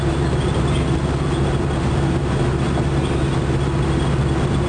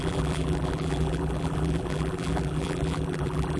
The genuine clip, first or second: first